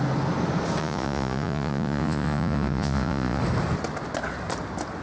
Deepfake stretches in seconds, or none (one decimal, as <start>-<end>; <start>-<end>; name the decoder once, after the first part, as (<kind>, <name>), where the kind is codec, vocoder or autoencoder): 0.8-3.4 (vocoder, Vocos)